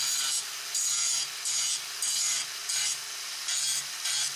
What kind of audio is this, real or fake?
fake